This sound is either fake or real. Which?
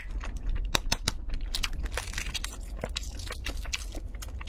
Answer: real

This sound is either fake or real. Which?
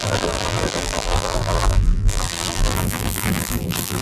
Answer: fake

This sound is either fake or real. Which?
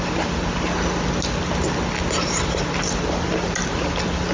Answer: real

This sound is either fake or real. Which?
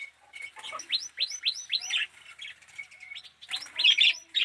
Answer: real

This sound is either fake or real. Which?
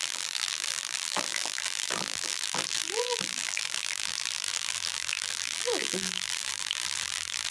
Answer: fake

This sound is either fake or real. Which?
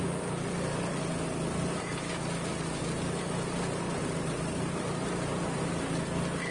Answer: real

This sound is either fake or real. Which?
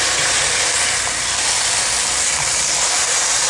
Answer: fake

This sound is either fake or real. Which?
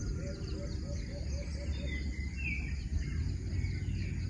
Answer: real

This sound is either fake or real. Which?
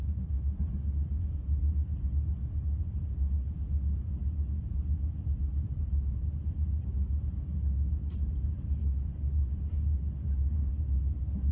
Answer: fake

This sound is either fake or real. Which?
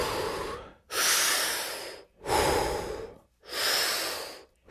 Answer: real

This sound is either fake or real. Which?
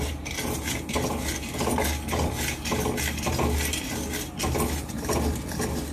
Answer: real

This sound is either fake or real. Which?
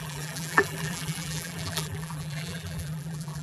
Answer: fake